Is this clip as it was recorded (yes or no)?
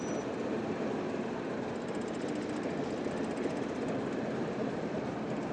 yes